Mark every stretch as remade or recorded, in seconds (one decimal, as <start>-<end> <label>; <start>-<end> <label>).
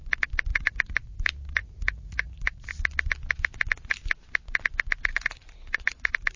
0.0-0.5 recorded; 0.5-1.2 remade; 1.2-1.6 recorded; 1.6-2.7 remade; 2.7-5.1 recorded; 5.1-6.0 remade; 6.0-6.4 recorded